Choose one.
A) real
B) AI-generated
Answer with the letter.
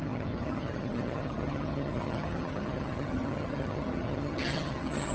B